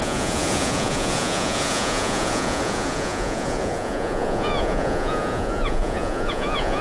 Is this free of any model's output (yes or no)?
no